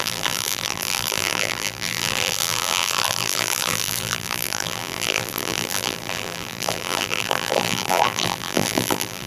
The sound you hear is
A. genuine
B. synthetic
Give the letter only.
B